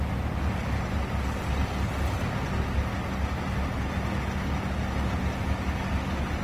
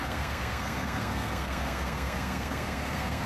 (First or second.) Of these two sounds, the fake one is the second